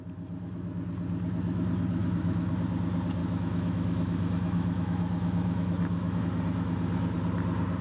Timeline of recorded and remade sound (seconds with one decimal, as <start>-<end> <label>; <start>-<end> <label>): 0.0-2.0 recorded; 2.0-2.5 remade; 2.5-3.2 recorded; 3.2-6.2 remade; 6.2-7.8 recorded